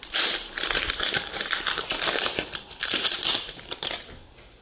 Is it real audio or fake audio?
fake